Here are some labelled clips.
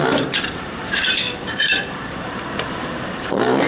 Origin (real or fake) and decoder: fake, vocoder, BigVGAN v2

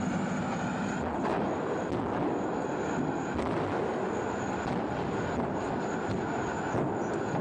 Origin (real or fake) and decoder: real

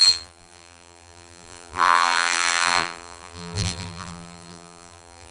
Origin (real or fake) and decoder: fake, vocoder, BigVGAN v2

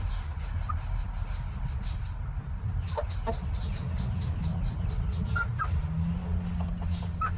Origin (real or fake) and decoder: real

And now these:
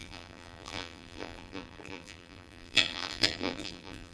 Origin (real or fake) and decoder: fake, vocoder, BigVGAN v2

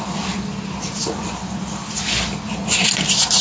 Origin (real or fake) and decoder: real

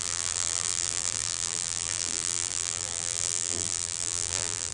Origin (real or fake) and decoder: fake, vocoder, BigVGAN v2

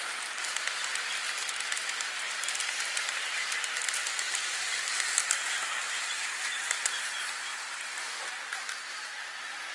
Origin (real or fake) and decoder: real